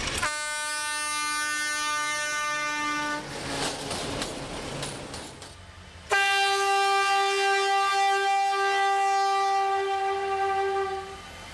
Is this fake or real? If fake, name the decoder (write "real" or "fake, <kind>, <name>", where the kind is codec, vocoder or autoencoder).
real